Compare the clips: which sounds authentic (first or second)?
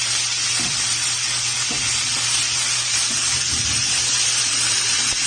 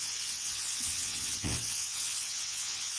first